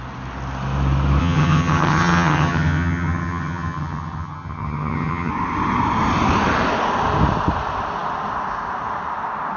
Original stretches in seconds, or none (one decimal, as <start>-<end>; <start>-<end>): 0.0-1.2; 5.3-9.6